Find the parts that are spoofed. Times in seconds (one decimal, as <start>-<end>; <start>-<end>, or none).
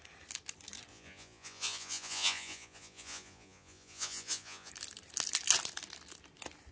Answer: 0.9-4.7